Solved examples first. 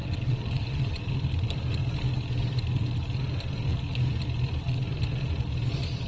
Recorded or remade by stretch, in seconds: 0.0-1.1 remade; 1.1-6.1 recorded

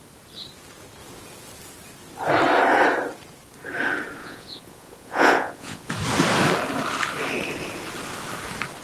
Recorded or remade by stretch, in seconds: 0.0-4.2 recorded; 4.2-5.9 remade; 5.9-8.8 recorded

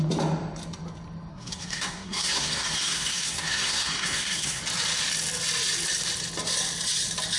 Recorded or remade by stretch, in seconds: 0.0-1.3 recorded; 1.3-4.6 remade; 4.6-7.4 recorded

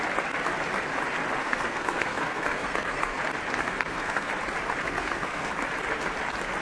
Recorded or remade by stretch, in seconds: 0.0-1.4 recorded; 1.4-3.2 remade; 3.2-3.6 recorded; 3.6-4.3 remade; 4.3-4.8 recorded; 4.8-5.5 remade; 5.5-6.6 recorded

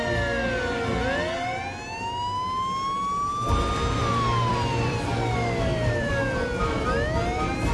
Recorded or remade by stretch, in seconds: 0.0-4.5 recorded; 4.5-6.1 remade; 6.1-7.7 recorded

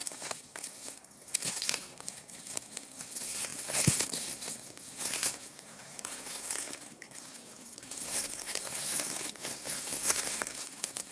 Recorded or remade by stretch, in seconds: 0.0-11.1 remade